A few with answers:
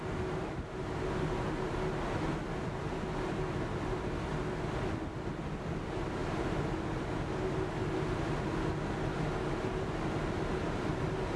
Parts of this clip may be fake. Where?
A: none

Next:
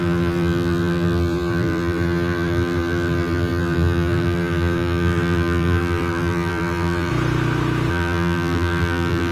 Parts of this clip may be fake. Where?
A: 0.0-7.1 (vocoder, BigVGAN v2); 7.9-9.3

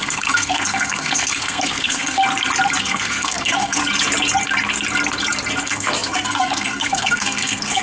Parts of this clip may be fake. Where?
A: 0.0-2.2 (codec, SNAC); 2.8-3.8; 5.6-7.8